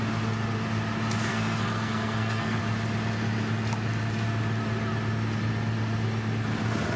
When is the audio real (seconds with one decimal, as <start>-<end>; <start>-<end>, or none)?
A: 0.0-1.3; 2.6-7.0